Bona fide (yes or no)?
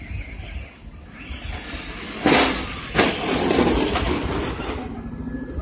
yes